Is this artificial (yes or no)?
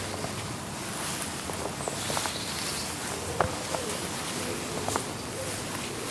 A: no